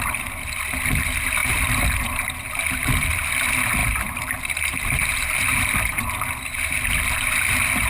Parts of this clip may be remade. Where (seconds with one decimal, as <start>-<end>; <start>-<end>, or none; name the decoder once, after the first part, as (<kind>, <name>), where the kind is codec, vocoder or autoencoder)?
1.4-2.3 (vocoder, BigVGAN v2); 3.8-4.4